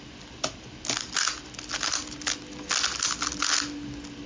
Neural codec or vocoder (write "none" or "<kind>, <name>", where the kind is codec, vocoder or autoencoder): none